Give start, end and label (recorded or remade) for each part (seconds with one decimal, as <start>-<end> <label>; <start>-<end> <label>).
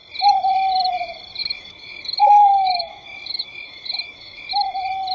0.0-1.4 recorded; 1.4-4.5 remade; 4.5-5.1 recorded